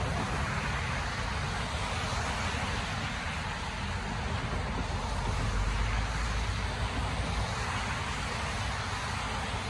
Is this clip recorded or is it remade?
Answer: recorded